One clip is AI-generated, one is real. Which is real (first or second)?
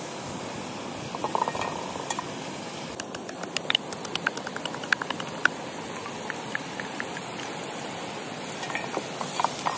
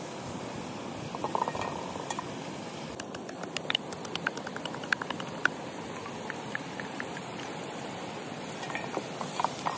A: first